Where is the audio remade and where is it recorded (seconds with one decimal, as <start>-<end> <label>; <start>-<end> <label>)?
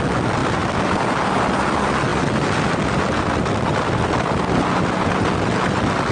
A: 0.0-6.1 recorded